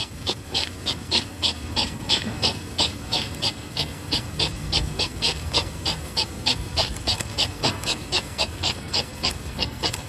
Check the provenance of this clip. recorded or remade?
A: remade